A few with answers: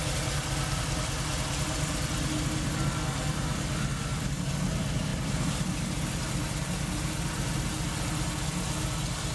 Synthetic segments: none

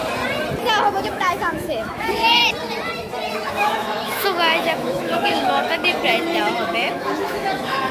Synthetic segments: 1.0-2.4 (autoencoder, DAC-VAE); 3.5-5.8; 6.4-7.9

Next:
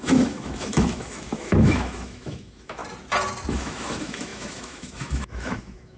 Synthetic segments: 0.0-2.8 (autoencoder, DAC-VAE); 3.5-6.0

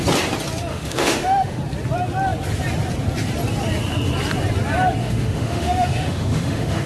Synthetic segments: 0.7-1.6 (autoencoder, DAC-VAE); 5.0-6.9

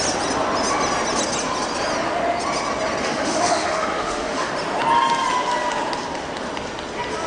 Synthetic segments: 3.0-4.5 (autoencoder, DAC-VAE)

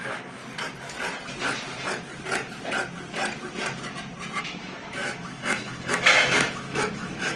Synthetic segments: 0.0-0.4 (autoencoder, DAC-VAE); 4.4-7.4

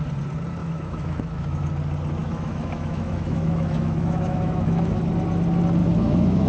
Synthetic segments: 0.6-1.6 (autoencoder, DAC-VAE); 2.2-5.0; 5.8-6.5